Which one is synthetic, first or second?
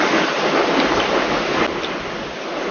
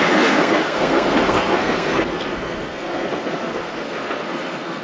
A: second